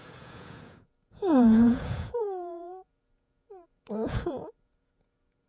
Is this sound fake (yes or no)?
yes